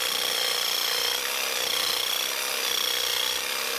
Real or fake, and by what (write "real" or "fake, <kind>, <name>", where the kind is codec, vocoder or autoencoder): real